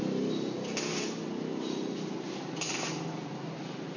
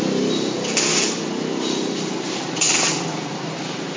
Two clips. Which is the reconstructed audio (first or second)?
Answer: second